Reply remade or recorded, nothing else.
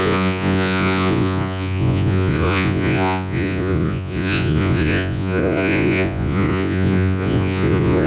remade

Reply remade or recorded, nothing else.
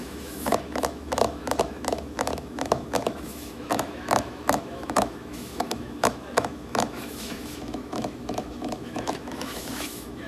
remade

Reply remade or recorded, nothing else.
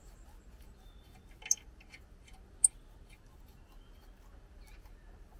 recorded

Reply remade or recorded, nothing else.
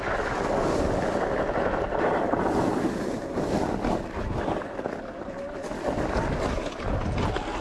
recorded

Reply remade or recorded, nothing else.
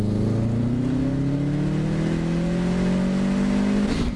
recorded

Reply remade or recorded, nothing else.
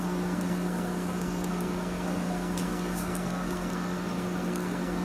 remade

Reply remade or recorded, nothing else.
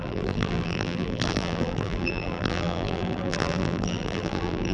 remade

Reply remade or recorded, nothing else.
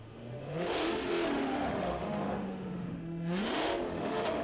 remade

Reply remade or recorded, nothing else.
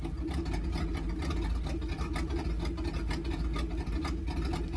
recorded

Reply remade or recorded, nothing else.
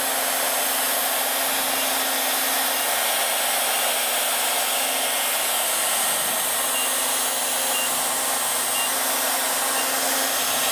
recorded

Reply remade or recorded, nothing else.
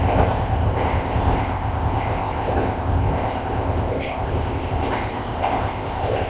remade